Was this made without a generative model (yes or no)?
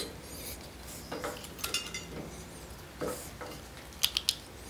yes